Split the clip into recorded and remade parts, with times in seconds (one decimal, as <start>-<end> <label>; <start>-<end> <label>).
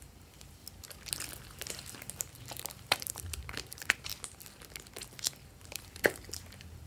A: 0.0-0.6 remade; 0.6-2.2 recorded; 2.2-4.1 remade; 4.1-5.6 recorded; 5.6-6.9 remade